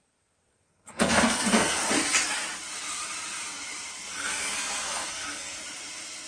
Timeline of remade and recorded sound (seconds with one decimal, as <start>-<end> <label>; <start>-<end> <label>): 0.0-0.5 recorded; 0.5-1.8 remade; 1.8-4.1 recorded; 4.1-5.6 remade; 5.6-6.3 recorded